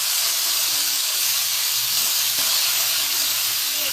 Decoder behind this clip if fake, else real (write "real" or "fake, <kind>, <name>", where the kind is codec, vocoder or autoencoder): fake, codec, DAC